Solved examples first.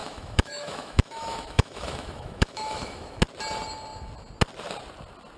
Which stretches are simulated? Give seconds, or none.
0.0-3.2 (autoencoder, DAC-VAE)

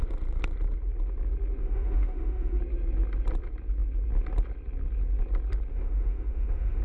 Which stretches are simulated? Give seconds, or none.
1.6-2.6 (autoencoder, DAC-VAE); 5.7-6.8